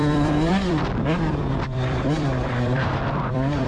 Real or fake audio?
fake